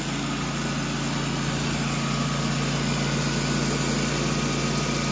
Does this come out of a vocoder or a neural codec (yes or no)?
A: no